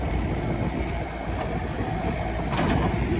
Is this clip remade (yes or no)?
no